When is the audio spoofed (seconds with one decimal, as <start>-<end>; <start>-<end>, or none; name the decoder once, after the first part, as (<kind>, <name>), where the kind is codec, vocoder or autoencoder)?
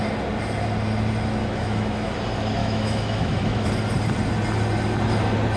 1.4-2.1 (autoencoder, DAC-VAE); 2.6-3.7